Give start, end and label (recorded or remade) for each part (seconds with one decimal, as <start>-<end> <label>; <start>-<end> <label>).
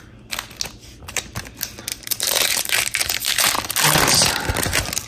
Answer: 0.0-1.9 recorded; 1.9-3.6 remade; 3.6-5.1 recorded